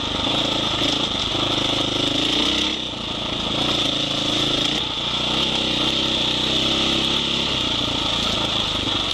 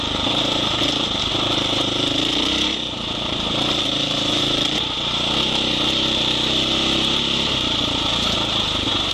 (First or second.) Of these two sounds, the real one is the first